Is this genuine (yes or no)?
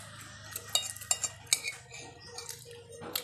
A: yes